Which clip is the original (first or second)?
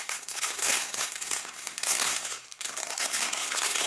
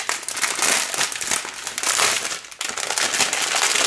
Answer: second